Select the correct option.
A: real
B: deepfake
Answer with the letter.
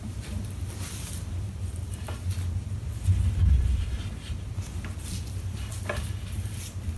B